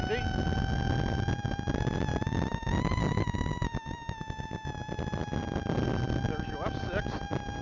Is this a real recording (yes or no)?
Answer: yes